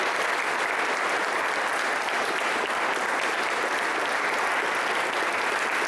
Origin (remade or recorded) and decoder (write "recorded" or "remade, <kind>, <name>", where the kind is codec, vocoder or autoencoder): recorded